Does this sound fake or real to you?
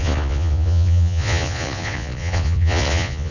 fake